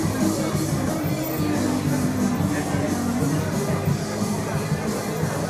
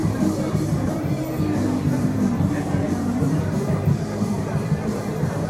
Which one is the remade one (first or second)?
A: second